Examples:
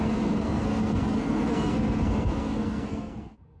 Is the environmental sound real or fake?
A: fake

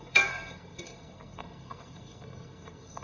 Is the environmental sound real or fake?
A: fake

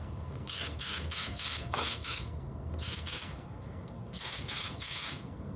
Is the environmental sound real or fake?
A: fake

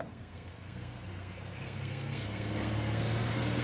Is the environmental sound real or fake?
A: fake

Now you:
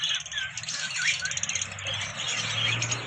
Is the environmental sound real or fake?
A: real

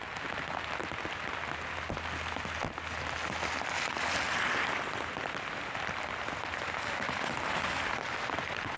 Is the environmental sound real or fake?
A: real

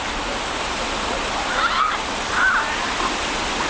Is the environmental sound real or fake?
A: real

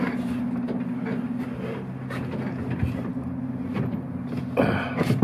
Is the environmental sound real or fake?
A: real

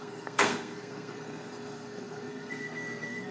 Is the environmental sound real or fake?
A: fake